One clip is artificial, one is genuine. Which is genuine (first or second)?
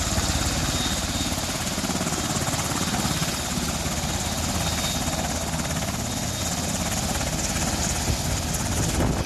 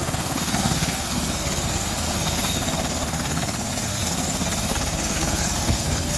first